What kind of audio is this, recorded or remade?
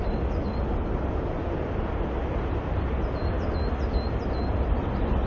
recorded